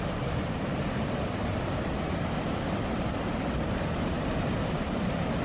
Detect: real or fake real